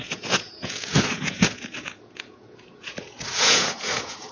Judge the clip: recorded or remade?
remade